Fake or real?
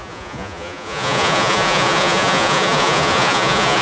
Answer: fake